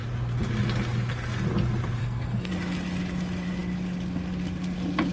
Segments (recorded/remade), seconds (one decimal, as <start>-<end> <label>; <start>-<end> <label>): 0.0-2.0 recorded; 2.0-2.5 remade; 2.5-5.1 recorded